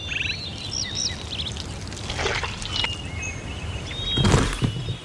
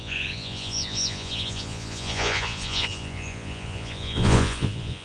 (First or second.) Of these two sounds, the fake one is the second